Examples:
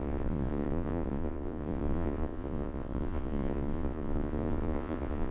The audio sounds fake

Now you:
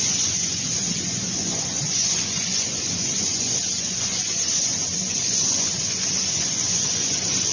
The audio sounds fake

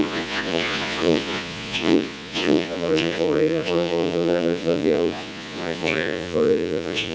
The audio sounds fake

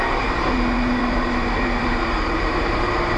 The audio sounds fake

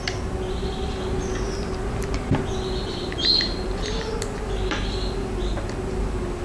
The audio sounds real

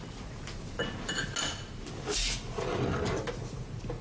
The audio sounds real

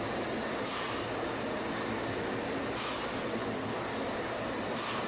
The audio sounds real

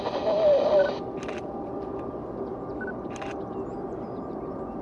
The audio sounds real